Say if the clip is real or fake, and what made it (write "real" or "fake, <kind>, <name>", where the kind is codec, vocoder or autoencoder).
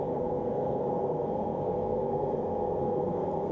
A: fake, codec, SNAC